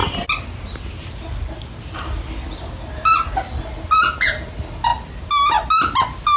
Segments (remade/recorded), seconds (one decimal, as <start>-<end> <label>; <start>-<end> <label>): 0.0-6.4 recorded